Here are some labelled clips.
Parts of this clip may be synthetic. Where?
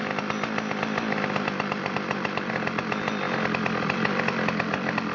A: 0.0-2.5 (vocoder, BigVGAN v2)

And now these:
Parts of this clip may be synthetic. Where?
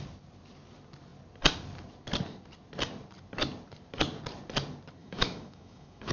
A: 5.0-6.1 (autoencoder, DAC-VAE)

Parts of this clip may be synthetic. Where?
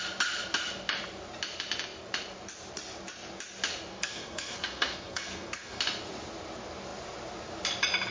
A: 3.9-5.8 (codec, SNAC)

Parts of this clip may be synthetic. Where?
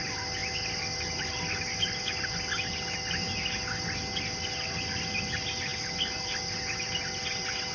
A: none